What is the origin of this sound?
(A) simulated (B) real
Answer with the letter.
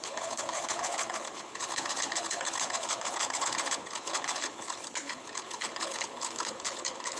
A